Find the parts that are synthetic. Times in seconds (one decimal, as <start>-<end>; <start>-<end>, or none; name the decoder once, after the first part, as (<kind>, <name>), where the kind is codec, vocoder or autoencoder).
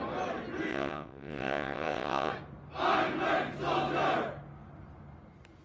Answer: 0.7-2.3 (vocoder, WaveNeXt)